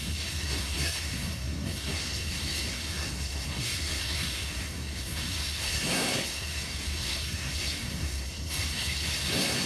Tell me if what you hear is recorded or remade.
remade